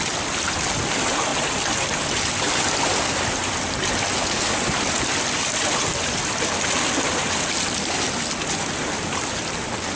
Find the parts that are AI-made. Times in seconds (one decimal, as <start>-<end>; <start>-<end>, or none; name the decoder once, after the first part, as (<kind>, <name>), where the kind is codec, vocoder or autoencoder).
none